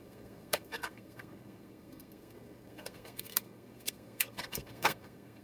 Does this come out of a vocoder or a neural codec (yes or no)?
yes